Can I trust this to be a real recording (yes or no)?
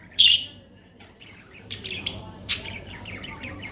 no